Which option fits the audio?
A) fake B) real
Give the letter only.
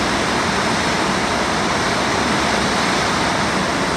B